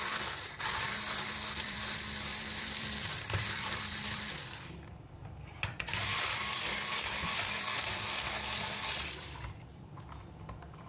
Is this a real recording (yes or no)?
no